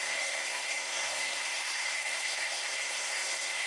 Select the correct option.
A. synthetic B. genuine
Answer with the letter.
A